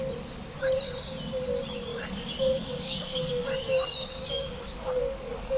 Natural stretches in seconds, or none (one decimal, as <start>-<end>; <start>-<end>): 0.0-1.9